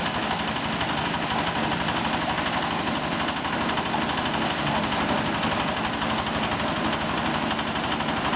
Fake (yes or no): no